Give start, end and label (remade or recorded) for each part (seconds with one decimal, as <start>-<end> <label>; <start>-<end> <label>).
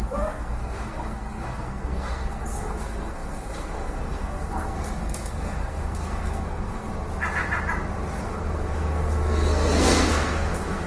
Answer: 0.0-6.9 remade; 6.9-8.2 recorded; 8.2-10.9 remade